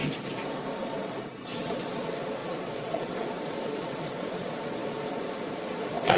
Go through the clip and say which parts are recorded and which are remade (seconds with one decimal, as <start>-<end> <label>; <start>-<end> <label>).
0.0-0.8 recorded; 0.8-6.2 remade